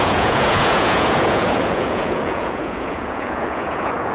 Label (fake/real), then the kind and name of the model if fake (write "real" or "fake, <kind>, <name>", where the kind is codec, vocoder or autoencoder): fake, vocoder, Vocos